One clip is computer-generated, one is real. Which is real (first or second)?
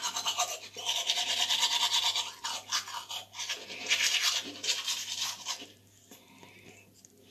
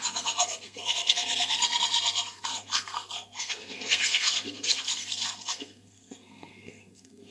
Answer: first